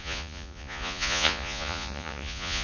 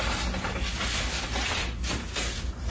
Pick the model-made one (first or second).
first